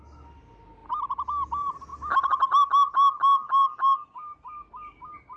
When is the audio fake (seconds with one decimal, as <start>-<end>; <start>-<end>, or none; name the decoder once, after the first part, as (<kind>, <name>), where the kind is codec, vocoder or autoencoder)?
none